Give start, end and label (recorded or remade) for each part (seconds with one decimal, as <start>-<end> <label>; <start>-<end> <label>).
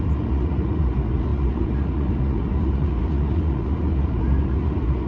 0.0-5.1 remade